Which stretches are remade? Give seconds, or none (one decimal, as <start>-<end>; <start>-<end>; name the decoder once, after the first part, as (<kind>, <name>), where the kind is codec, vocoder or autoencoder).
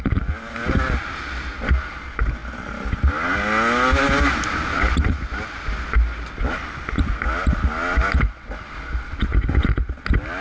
none